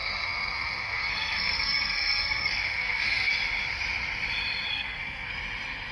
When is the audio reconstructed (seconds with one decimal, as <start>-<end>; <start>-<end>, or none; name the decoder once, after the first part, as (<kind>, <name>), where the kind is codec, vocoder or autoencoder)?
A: 0.0-3.3 (codec, SNAC); 4.7-5.3